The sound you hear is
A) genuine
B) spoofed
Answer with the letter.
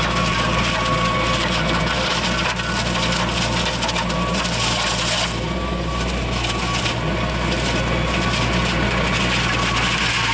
A